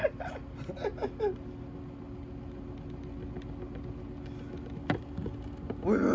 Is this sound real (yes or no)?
yes